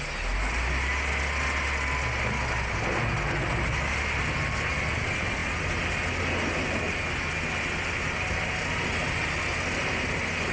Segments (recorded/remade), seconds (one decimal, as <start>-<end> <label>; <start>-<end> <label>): 0.0-10.5 recorded